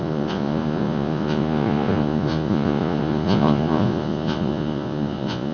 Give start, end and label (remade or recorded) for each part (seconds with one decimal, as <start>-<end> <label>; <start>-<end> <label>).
0.0-5.5 remade